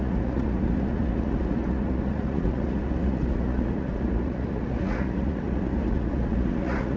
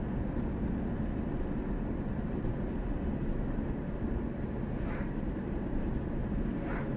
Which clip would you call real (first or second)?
second